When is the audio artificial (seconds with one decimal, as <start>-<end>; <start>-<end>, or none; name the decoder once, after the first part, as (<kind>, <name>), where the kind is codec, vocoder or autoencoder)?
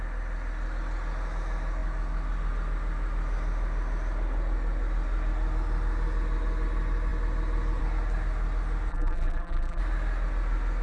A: 8.9-9.8 (vocoder, BigVGAN v2)